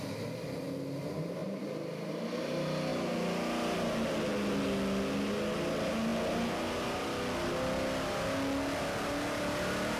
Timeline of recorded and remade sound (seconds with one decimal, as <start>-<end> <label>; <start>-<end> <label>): 0.0-1.4 recorded; 1.4-2.1 remade; 2.1-10.0 recorded